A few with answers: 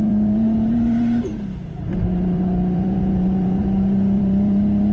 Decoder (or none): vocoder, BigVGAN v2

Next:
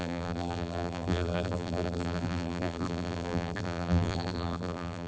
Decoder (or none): vocoder, BigVGAN v2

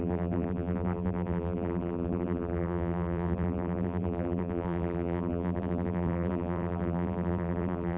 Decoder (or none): vocoder, BigVGAN v2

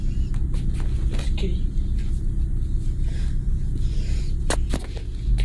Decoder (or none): none